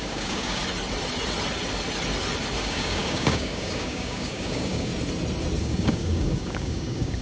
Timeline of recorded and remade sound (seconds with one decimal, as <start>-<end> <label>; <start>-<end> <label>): 0.0-0.6 remade; 0.6-2.6 recorded; 2.6-4.9 remade; 4.9-5.6 recorded; 5.6-7.2 remade